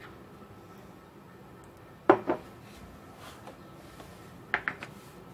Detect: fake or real real